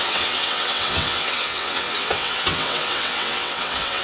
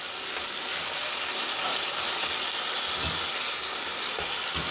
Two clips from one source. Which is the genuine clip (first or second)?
second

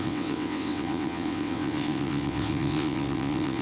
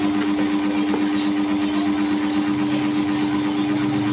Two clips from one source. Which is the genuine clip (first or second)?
second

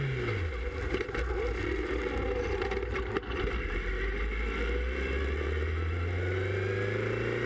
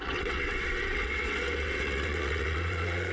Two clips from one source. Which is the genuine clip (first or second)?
first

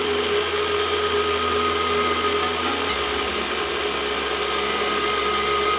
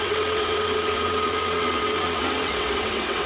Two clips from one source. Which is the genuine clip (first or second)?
first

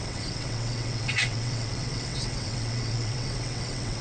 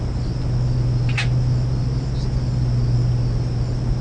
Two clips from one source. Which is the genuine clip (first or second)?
second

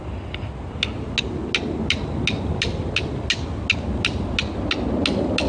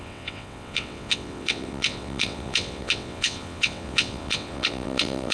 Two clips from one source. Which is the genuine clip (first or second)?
first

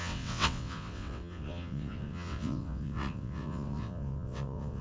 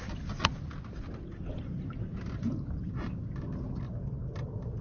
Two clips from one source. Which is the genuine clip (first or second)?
second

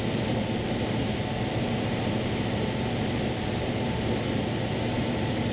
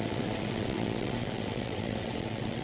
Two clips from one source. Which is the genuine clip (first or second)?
first